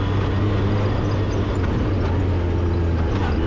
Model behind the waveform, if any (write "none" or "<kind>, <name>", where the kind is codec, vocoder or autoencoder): none